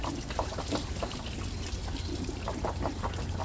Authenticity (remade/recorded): recorded